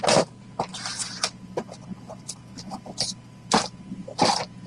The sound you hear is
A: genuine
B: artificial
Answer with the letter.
A